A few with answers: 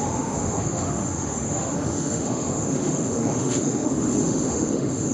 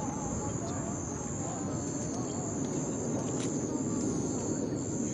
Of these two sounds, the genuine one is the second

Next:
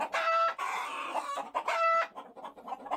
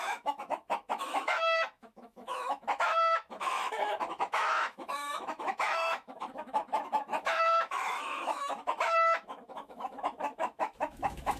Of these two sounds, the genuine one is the first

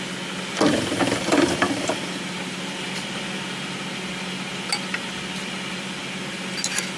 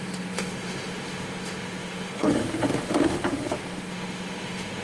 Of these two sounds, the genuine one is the first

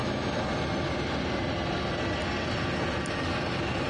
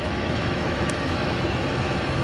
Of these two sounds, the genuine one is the first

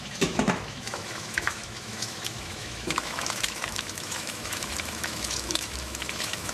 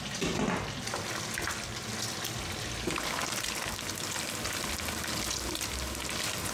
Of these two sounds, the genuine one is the second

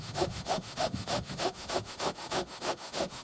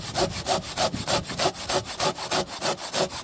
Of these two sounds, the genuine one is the second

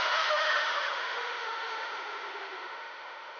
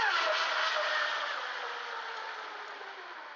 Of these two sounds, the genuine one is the second